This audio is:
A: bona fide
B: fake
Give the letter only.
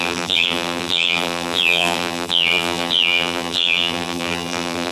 B